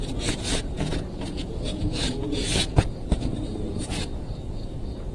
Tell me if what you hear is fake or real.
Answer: fake